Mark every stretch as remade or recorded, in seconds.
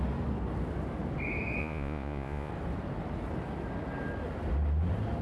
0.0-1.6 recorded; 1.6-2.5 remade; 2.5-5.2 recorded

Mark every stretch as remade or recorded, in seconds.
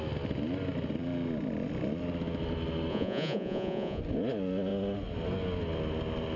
0.0-2.9 recorded; 2.9-4.0 remade; 4.0-6.4 recorded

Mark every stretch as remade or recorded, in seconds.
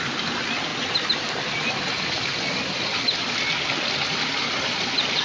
0.0-5.2 recorded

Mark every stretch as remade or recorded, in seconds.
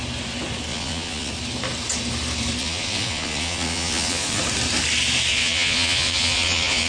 0.0-0.7 recorded; 0.7-1.3 remade; 1.3-2.6 recorded; 2.6-4.4 remade; 4.4-5.3 recorded; 5.3-6.9 remade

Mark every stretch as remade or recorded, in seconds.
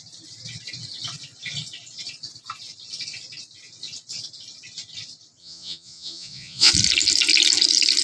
0.0-5.4 recorded; 5.4-6.7 remade; 6.7-8.0 recorded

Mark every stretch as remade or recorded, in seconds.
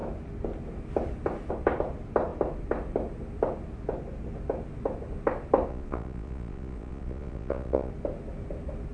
0.0-5.7 recorded; 5.7-7.9 remade; 7.9-8.9 recorded